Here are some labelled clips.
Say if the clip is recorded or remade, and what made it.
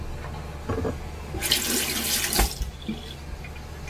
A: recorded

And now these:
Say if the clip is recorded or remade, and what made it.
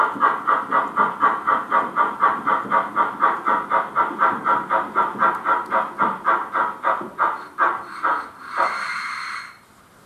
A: recorded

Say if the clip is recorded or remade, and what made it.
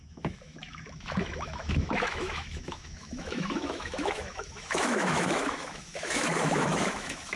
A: remade, autoencoder, DAC-VAE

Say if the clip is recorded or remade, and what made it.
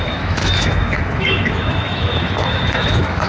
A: remade, autoencoder, DAC-VAE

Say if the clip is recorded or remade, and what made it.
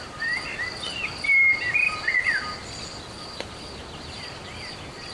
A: recorded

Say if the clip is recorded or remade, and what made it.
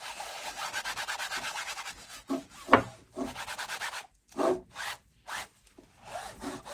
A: recorded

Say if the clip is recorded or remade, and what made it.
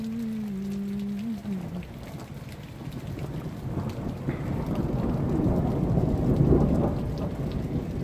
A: recorded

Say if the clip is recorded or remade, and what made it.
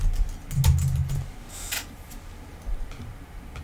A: recorded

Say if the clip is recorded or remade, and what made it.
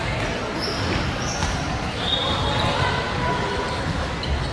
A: recorded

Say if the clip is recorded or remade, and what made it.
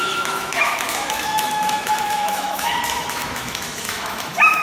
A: remade, autoencoder, DAC-VAE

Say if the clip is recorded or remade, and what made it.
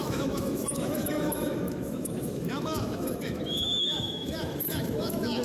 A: remade, autoencoder, DAC-VAE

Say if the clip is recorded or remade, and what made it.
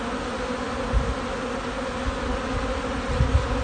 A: recorded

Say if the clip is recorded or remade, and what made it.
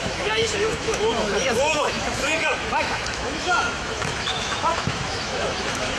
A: remade, autoencoder, DAC-VAE